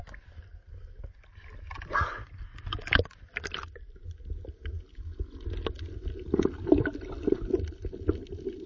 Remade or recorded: recorded